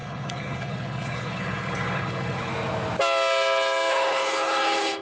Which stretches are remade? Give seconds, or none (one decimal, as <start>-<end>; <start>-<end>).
0.0-2.5; 3.9-5.0